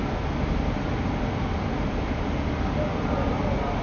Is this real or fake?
real